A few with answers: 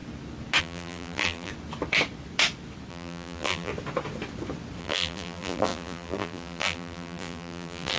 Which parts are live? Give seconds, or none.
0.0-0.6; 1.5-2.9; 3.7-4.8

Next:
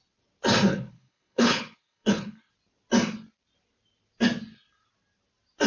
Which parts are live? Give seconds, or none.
0.0-0.7; 2.5-5.7

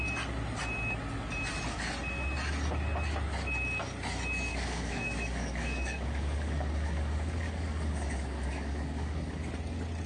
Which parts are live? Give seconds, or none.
0.0-4.5; 9.5-10.1

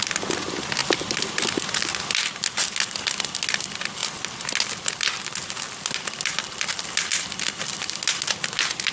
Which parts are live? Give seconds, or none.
0.0-8.9

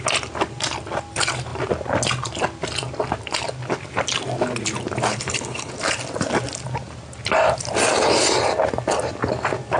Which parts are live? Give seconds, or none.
0.0-5.1; 5.7-9.8

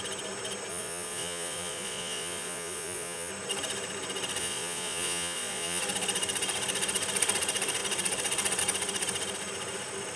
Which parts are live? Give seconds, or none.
0.0-0.7; 3.3-4.4; 5.8-10.2

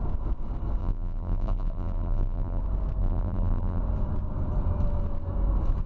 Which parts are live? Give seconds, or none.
0.0-0.8; 2.6-3.0; 3.8-5.9

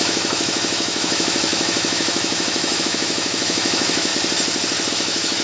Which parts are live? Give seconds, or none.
4.1-4.9